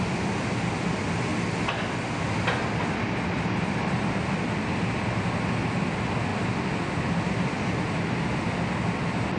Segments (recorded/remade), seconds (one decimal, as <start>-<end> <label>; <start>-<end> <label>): 0.0-9.4 recorded